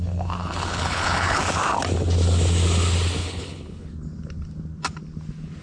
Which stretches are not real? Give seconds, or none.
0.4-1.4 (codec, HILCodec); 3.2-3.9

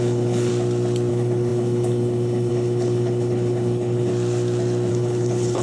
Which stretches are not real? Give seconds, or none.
0.0-0.5 (codec, HILCodec); 1.1-4.1; 4.9-5.6